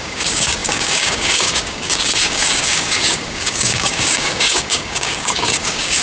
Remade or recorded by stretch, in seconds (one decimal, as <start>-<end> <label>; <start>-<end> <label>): 0.0-6.0 remade